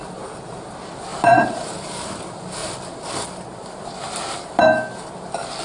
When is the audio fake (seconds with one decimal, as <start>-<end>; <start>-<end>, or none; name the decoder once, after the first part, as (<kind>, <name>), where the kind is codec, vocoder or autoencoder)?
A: 1.1-2.2 (vocoder, BigVGAN v2); 2.6-5.1